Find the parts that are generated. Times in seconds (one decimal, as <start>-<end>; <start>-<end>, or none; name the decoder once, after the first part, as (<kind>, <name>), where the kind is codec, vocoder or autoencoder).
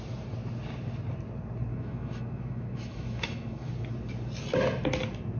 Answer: 1.7-3.7 (autoencoder, DAC-VAE)